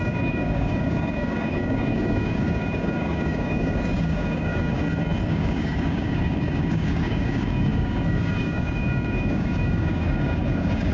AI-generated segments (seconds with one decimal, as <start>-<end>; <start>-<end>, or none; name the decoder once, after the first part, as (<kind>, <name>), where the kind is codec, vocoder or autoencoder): 0.0-4.8 (codec, DAC); 5.3-10.9